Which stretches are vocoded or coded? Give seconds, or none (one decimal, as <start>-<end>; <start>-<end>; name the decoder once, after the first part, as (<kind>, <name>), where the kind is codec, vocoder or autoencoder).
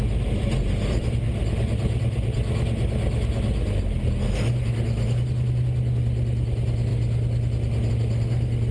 none